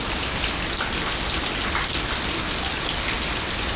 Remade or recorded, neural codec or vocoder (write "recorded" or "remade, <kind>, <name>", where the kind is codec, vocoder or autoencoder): recorded